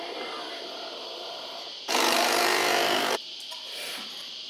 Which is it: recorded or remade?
remade